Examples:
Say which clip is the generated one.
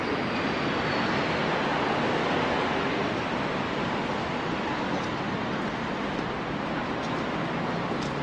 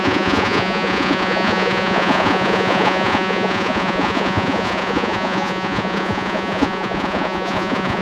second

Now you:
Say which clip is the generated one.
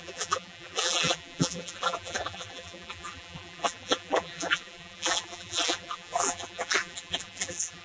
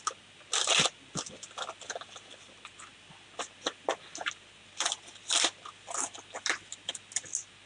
first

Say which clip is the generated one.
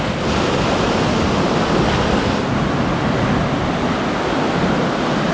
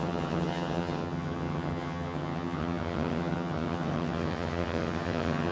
second